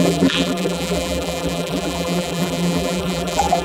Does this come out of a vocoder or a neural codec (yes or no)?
yes